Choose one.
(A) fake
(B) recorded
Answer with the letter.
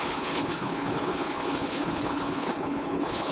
A